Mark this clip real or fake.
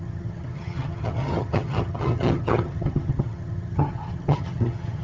fake